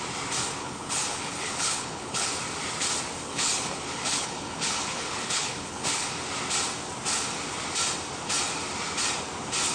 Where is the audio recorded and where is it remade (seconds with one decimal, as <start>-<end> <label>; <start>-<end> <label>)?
0.0-0.6 recorded; 0.6-2.3 remade; 2.3-3.2 recorded; 3.2-6.1 remade; 6.1-9.7 recorded